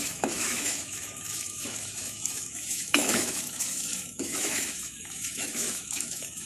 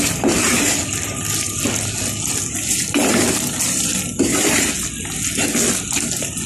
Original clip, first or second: second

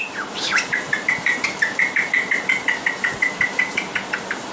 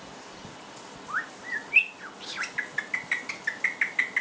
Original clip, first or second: second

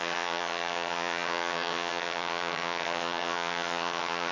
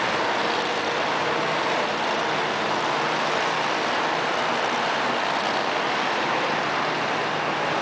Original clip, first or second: second